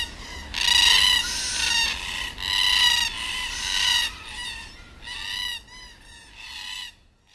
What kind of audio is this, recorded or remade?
recorded